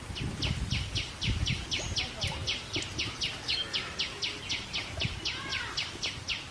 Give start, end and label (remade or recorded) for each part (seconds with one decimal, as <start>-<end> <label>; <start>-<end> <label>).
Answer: 0.0-5.5 recorded; 5.5-6.1 remade; 6.1-6.5 recorded